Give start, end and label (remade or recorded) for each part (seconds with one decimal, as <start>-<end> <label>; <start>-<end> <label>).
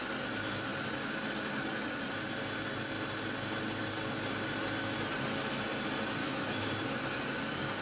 0.0-6.2 recorded; 6.2-6.7 remade; 6.7-7.8 recorded